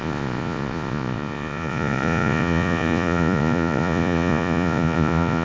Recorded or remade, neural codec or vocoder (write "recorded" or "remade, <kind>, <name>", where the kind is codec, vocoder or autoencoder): remade, vocoder, Vocos